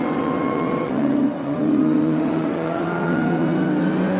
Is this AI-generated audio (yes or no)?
yes